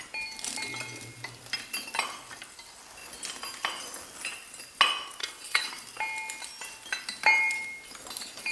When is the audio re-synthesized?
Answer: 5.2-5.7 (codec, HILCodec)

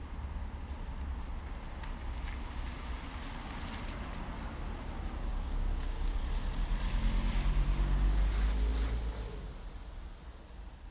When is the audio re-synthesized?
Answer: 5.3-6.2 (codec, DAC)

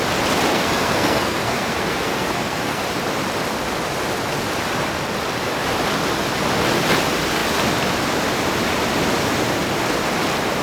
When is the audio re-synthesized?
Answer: 0.5-2.8 (codec, SNAC)

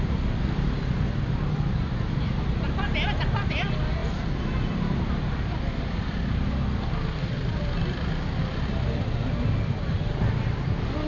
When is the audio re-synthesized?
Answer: none

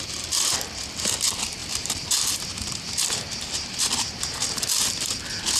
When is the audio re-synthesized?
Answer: 1.6-5.0 (vocoder, BigVGAN v2)